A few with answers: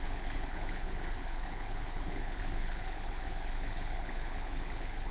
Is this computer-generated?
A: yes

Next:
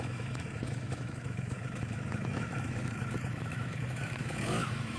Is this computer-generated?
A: yes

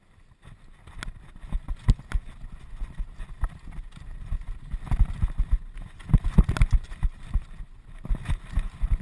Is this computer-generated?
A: no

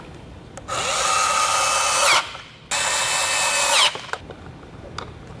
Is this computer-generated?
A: no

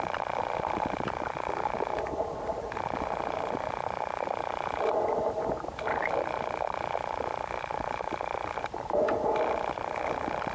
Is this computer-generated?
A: no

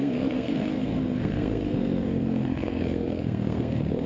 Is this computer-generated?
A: yes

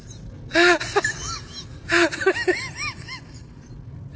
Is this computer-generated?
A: no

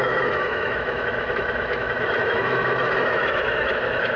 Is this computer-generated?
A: yes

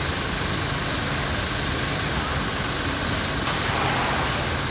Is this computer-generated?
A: no